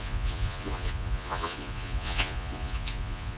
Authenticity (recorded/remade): remade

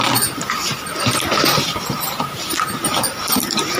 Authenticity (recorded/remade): recorded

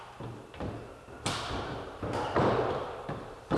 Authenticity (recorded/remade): recorded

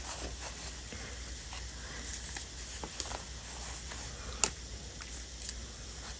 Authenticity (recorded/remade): recorded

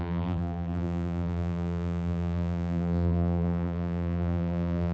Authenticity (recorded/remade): remade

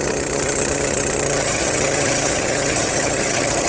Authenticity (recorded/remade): remade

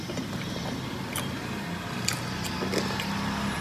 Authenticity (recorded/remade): recorded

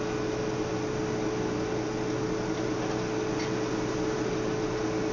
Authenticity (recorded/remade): recorded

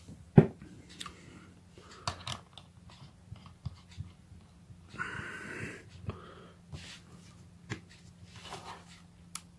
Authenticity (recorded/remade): recorded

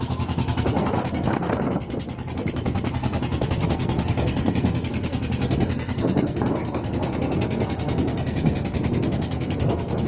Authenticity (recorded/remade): remade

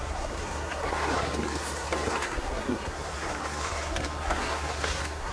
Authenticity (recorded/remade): remade